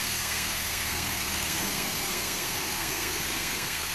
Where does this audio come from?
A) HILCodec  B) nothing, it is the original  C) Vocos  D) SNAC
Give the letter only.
D